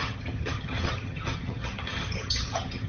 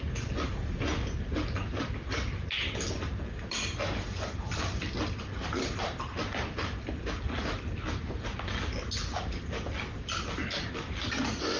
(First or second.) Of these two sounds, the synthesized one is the first